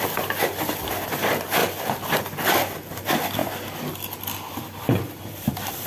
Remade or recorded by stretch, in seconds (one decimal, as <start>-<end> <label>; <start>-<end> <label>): 0.0-1.6 recorded; 1.6-2.2 remade; 2.2-5.9 recorded